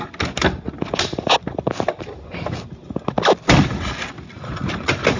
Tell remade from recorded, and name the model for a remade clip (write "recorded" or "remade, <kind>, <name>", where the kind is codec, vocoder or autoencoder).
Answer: recorded